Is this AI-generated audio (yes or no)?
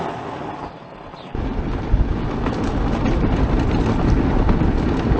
no